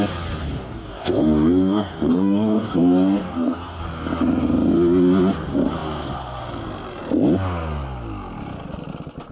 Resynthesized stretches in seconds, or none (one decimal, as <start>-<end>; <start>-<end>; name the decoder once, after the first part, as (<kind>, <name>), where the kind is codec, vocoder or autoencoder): 0.4-3.8 (codec, DAC)